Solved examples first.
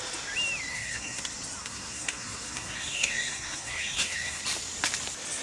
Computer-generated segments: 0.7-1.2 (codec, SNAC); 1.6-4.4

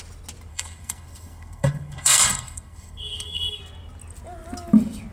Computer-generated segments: 0.5-3.6 (codec, SNAC)